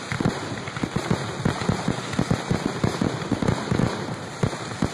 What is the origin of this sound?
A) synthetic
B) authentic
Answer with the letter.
A